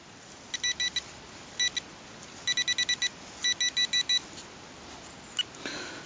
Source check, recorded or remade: recorded